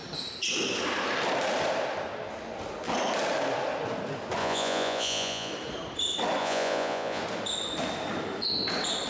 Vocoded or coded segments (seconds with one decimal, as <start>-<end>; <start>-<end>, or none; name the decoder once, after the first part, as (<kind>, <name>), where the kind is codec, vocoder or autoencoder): 4.4-5.5 (vocoder, Vocos); 6.4-7.2